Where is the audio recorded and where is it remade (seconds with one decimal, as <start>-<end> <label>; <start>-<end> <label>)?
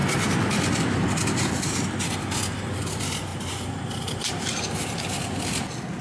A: 0.0-3.3 recorded; 3.3-4.8 remade; 4.8-6.0 recorded